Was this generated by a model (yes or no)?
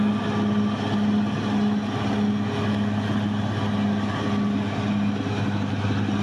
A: no